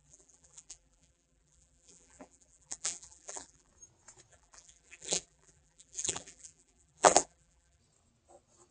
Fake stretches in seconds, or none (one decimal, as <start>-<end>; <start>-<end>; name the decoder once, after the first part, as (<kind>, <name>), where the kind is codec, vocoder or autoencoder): 0.0-3.7 (vocoder, BigVGAN v2); 4.3-7.8